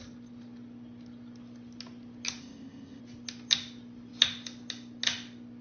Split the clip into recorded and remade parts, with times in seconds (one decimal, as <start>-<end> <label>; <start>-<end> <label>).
0.0-2.4 recorded; 2.4-3.0 remade; 3.0-5.6 recorded